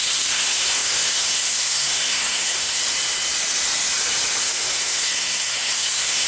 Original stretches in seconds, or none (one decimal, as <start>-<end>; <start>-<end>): 2.8-4.4

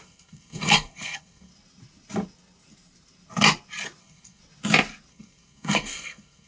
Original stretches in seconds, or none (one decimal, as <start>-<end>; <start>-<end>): 1.5-4.0; 4.4-5.1